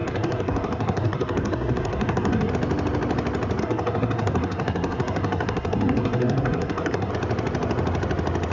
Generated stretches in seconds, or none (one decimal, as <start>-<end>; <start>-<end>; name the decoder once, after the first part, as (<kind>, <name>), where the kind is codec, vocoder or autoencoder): 0.0-2.5 (codec, SNAC); 3.6-7.1